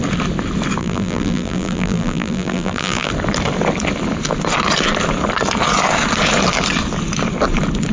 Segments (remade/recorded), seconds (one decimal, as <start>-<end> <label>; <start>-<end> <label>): 0.0-0.8 recorded; 0.8-3.1 remade; 3.1-7.9 recorded

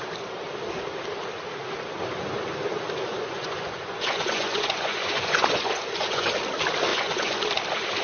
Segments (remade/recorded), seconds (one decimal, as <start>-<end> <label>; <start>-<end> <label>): 0.0-3.1 recorded; 3.1-6.3 remade; 6.3-6.9 recorded; 6.9-7.4 remade; 7.4-8.0 recorded

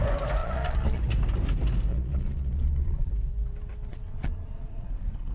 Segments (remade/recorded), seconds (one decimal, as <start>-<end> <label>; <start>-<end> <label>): 0.0-0.4 recorded; 0.4-1.0 remade; 1.0-1.9 recorded; 1.9-3.1 remade; 3.1-3.9 recorded; 3.9-5.3 remade